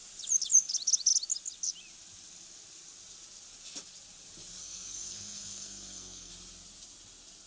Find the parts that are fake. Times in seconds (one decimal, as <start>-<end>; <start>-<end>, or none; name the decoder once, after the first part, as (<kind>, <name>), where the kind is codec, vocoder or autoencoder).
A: 4.6-6.3 (codec, SNAC)